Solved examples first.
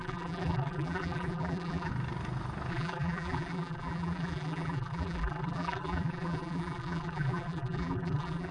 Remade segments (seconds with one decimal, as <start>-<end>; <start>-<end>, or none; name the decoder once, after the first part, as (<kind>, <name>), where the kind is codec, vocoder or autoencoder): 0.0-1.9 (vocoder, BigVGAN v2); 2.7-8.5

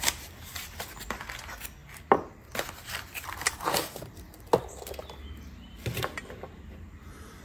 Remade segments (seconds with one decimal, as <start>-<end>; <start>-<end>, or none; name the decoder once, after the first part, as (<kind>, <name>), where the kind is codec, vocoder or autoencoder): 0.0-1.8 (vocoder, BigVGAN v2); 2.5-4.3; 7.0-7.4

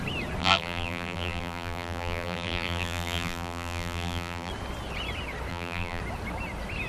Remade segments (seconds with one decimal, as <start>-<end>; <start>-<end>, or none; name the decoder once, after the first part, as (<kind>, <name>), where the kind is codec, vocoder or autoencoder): 0.4-4.5 (vocoder, BigVGAN v2); 5.5-6.0